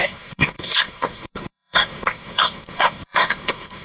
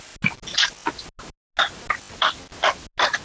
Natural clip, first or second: second